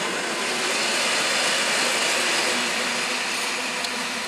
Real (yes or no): yes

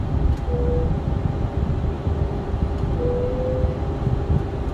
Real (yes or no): yes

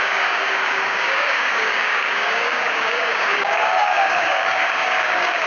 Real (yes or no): no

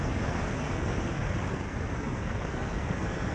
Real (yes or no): no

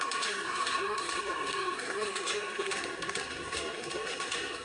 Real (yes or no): no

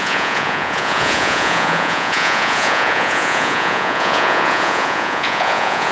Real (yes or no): no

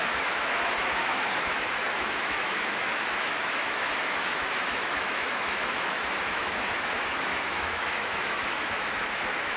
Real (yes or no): no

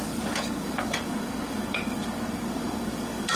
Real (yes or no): no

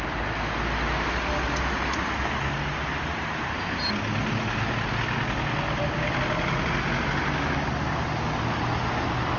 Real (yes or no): yes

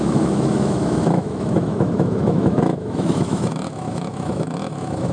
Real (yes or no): no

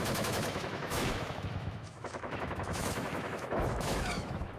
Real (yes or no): no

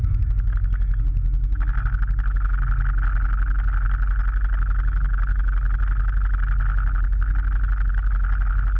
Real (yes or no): yes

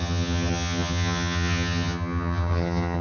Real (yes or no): no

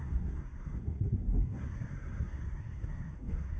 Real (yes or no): no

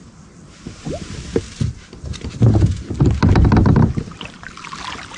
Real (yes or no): yes